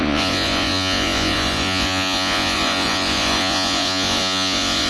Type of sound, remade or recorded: remade